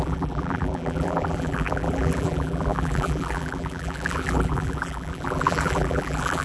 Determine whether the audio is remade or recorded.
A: remade